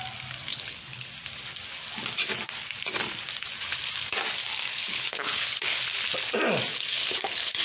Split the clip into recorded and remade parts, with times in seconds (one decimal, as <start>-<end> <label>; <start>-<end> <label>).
0.0-0.5 recorded; 0.5-1.1 remade; 1.1-4.7 recorded; 4.7-5.8 remade; 5.8-6.7 recorded; 6.7-7.6 remade